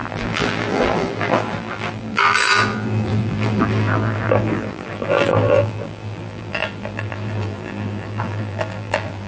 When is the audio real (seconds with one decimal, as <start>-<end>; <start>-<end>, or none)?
none